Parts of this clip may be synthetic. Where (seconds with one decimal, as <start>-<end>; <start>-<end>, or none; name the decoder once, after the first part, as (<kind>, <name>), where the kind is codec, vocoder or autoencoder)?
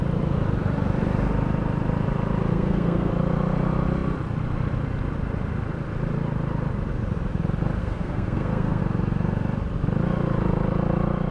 2.5-3.1 (codec, SNAC); 7.8-8.8